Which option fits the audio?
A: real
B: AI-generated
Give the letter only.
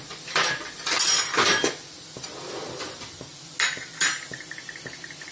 A